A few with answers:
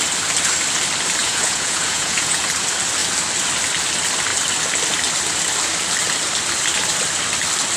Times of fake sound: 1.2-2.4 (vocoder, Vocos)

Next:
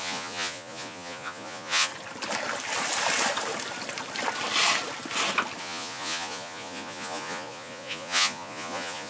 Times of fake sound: 0.0-1.9 (vocoder, Vocos); 5.6-9.1

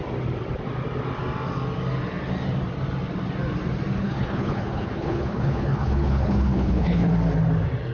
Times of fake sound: 4.0-7.1 (codec, HILCodec)

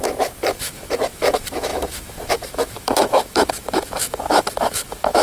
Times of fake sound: 0.0-5.2 (autoencoder, DAC-VAE)